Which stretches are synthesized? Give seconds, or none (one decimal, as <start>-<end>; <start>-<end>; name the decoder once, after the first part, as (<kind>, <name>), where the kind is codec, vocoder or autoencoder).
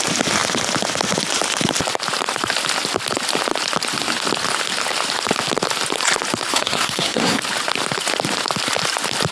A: 6.5-7.4 (codec, SNAC)